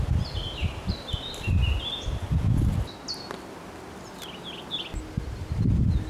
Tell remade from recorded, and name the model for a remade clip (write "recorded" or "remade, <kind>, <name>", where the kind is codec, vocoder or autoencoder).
recorded